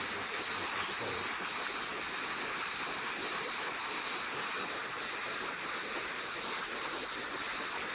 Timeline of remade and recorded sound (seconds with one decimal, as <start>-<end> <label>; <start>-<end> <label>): 0.0-7.9 recorded